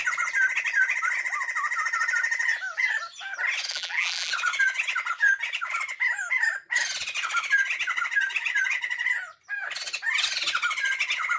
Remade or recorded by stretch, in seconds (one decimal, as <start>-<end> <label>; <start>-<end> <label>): 0.0-3.7 recorded; 3.7-4.3 remade; 4.3-11.4 recorded